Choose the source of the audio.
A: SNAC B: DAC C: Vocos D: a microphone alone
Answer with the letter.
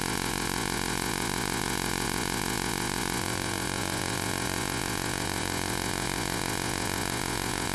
C